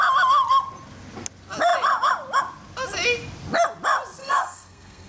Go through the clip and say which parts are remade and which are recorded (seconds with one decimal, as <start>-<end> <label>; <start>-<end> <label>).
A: 0.0-4.2 recorded; 4.2-5.1 remade